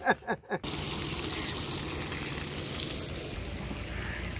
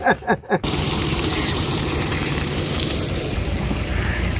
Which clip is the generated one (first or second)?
second